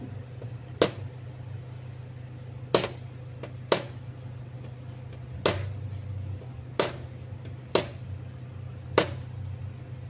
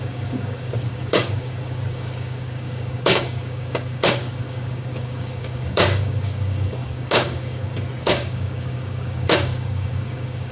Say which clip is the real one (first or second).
first